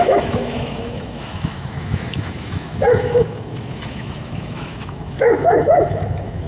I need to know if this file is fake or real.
fake